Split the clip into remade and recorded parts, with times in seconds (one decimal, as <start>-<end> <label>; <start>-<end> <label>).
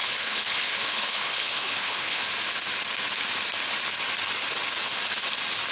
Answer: 0.0-2.3 remade; 2.3-5.7 recorded